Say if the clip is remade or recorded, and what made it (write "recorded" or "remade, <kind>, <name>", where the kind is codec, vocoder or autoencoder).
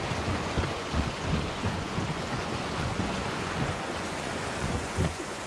remade, vocoder, Vocos